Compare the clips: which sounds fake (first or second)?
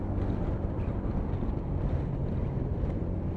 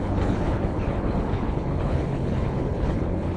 second